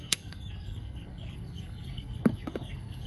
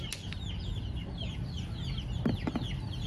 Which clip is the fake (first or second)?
first